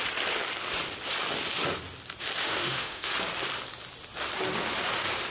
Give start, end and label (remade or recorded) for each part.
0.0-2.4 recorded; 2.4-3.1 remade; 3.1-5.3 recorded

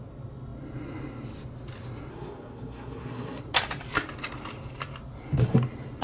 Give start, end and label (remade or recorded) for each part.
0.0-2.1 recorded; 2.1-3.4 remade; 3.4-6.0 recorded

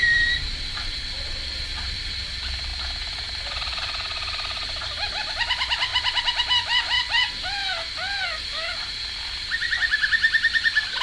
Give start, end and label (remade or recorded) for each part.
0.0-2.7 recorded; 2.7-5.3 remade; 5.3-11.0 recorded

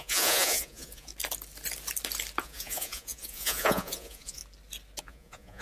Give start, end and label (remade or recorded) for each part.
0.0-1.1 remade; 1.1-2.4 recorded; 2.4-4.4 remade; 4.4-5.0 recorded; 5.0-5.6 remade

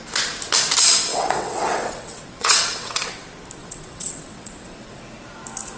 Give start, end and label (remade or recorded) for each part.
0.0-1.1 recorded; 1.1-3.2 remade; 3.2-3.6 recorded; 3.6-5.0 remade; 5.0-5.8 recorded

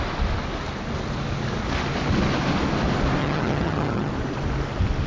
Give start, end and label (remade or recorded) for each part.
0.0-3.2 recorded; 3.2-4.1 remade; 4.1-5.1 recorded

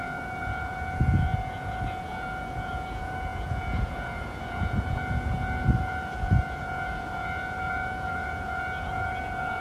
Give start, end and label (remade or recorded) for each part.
0.0-9.6 remade